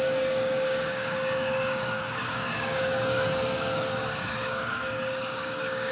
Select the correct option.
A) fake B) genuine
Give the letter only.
A